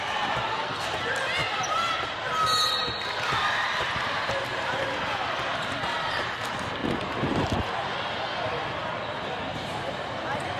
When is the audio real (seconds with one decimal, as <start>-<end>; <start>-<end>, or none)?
0.0-0.5; 1.0-10.6

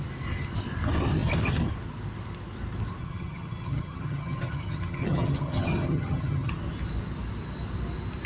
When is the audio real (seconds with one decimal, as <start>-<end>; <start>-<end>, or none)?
0.0-3.0; 6.5-8.3